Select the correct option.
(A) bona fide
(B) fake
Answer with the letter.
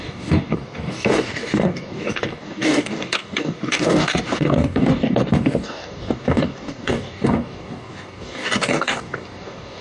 B